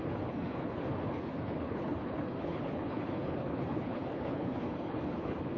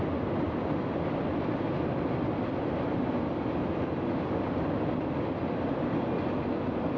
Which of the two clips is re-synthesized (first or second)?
first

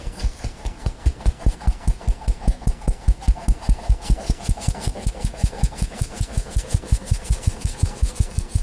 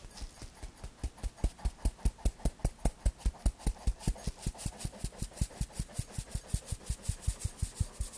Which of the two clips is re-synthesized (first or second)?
first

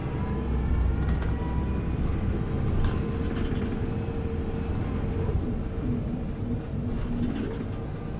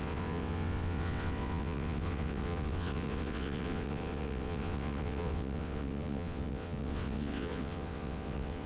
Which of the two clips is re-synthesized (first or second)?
second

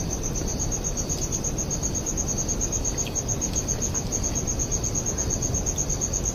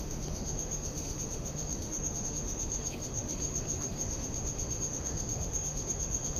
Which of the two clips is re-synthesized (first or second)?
second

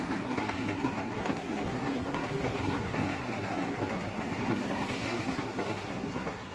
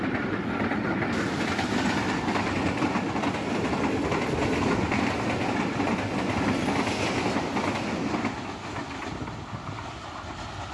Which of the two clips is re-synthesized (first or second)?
first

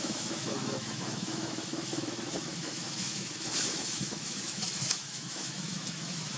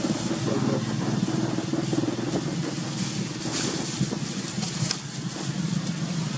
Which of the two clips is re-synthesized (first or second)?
first